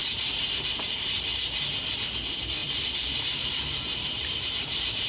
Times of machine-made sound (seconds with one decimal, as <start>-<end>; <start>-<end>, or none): 2.6-5.1